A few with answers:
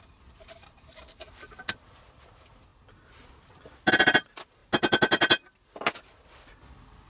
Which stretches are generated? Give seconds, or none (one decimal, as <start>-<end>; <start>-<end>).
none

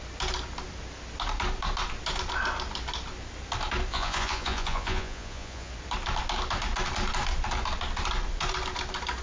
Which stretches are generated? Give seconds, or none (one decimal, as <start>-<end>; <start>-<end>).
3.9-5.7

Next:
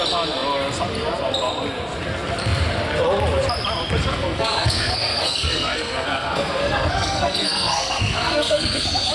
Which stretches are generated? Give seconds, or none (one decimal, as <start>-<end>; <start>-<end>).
4.1-9.1

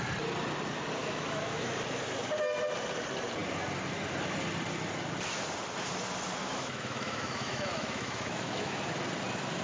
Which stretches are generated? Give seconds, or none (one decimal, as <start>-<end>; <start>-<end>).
1.0-1.7; 6.4-8.9

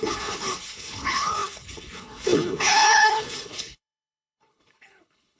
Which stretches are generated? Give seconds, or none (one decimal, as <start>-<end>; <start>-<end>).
0.0-5.4

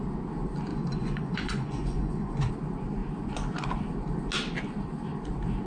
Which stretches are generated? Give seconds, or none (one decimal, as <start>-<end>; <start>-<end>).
0.7-2.5